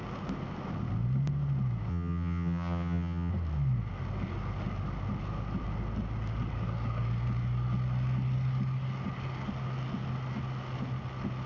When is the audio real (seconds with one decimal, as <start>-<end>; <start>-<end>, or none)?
0.0-1.9; 3.3-11.5